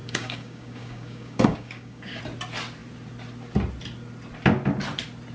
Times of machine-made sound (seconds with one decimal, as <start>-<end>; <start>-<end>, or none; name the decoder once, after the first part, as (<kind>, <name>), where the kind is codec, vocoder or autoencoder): 0.0-2.2 (codec, DAC)